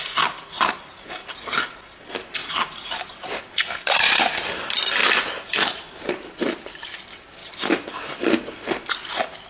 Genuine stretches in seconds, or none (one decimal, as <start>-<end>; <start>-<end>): 0.0-1.2; 2.0-2.4; 4.0-7.4; 8.1-9.5